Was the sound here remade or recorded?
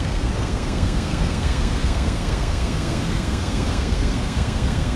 remade